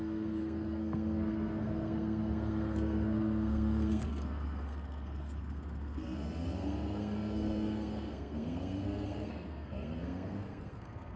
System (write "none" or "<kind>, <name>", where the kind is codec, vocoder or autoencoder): codec, SNAC